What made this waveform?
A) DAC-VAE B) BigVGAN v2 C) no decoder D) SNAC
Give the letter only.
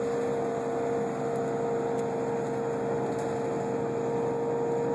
C